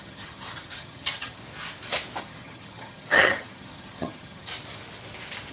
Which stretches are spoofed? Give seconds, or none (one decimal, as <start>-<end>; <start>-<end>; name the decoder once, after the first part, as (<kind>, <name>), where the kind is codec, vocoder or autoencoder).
0.0-1.4 (vocoder, HiFi-GAN); 2.2-4.5